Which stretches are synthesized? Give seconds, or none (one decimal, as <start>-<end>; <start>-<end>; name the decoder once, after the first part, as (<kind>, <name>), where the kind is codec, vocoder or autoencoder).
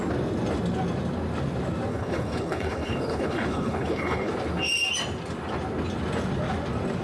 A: 1.9-4.3 (codec, HILCodec)